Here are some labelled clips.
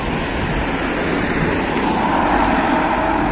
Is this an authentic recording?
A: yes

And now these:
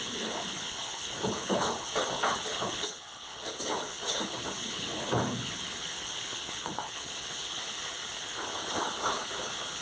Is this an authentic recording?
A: no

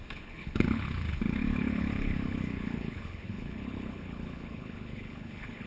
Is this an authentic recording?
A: no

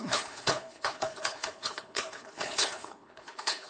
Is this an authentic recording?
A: no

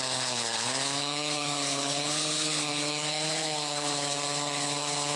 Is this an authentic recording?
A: no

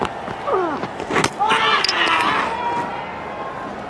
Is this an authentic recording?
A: yes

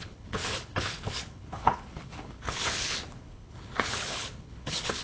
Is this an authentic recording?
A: no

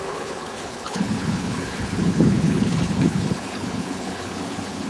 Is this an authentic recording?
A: no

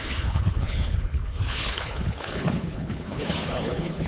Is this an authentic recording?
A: no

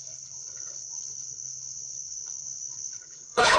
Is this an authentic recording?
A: no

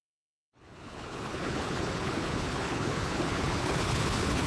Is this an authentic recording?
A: no